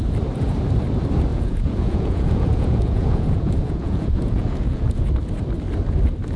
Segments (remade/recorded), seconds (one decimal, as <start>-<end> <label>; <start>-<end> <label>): 0.0-1.3 recorded; 1.3-5.1 remade; 5.1-6.4 recorded